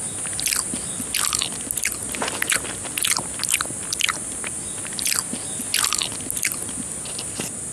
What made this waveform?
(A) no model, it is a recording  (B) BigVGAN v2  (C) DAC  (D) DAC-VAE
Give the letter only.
A